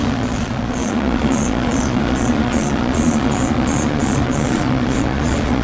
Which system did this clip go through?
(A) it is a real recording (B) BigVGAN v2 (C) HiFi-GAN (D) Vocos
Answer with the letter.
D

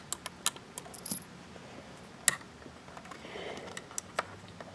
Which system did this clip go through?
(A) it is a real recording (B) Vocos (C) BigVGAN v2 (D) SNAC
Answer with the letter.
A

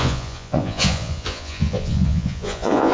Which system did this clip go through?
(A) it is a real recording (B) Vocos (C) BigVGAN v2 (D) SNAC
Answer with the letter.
B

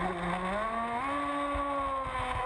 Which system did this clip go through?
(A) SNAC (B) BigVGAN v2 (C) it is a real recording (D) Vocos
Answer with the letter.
C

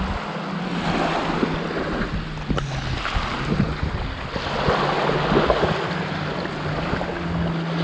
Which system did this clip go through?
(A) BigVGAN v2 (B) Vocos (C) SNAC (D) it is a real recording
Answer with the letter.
D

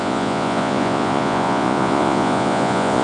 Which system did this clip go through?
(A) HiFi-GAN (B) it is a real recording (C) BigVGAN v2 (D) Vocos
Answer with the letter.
D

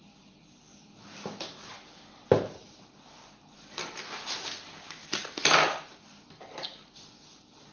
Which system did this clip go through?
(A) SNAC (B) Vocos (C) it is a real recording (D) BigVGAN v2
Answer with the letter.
C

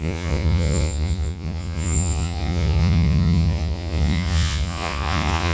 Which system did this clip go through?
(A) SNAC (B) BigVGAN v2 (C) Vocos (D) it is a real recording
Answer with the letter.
C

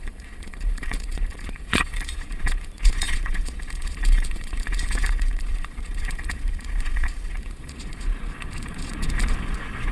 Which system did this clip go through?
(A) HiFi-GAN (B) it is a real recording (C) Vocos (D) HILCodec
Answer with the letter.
C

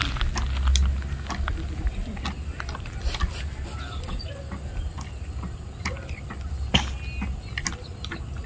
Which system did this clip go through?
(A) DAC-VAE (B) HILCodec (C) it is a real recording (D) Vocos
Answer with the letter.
C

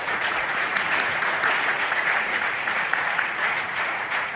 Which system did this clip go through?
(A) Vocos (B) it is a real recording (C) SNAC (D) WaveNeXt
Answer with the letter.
A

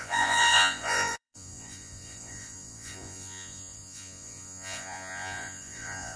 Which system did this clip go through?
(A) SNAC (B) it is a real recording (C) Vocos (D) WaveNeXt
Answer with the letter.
C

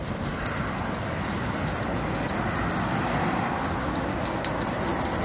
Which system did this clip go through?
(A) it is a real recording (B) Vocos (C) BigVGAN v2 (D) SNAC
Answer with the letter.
A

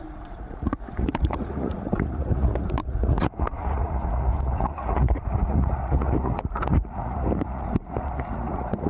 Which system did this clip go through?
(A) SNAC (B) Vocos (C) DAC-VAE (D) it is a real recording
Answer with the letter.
B